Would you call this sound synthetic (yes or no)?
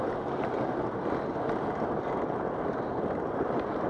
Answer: no